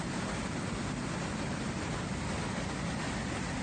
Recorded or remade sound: recorded